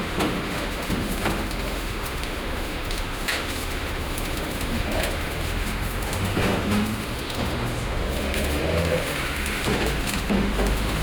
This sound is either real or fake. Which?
fake